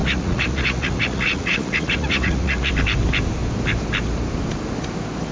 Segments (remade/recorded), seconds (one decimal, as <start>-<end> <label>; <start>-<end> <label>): 0.0-2.7 remade; 2.7-5.3 recorded